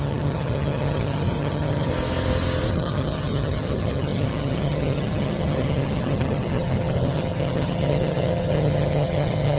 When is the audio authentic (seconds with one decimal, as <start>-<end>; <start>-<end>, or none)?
1.9-2.7